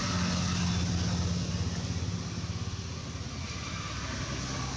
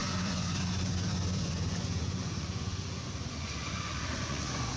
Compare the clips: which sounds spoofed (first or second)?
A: second